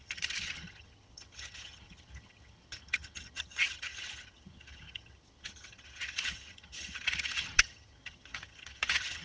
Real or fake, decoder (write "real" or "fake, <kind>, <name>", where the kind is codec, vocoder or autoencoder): fake, vocoder, HiFi-GAN